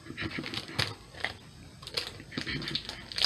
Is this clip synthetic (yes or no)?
no